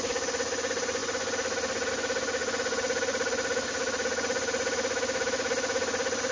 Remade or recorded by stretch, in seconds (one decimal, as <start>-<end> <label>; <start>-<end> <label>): 0.0-1.0 recorded; 1.0-1.9 remade; 1.9-2.4 recorded; 2.4-6.3 remade